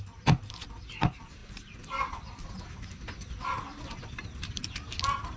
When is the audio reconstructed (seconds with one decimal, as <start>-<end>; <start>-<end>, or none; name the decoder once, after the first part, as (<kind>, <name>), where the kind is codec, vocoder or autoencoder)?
none